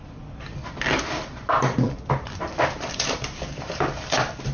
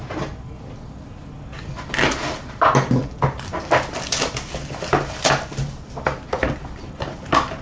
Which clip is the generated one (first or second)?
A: first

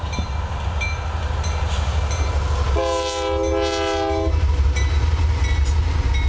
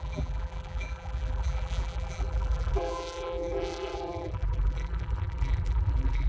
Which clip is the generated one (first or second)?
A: second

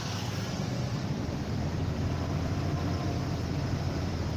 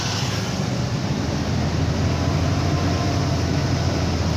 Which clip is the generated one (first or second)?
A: first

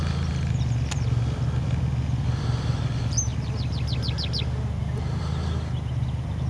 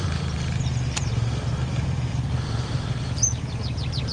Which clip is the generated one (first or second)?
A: second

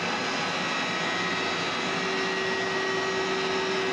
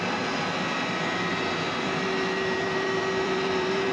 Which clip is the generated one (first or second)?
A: second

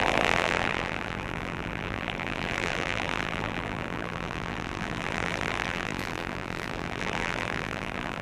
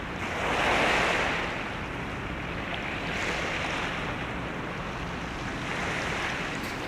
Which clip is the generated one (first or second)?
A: first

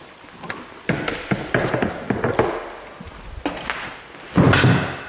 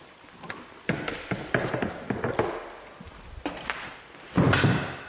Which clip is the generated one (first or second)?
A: second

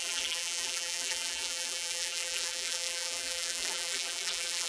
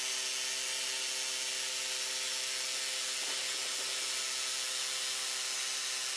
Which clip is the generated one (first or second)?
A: first